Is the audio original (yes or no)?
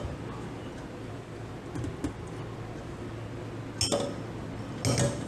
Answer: yes